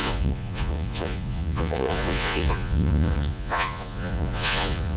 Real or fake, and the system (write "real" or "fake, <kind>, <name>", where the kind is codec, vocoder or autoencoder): fake, vocoder, Vocos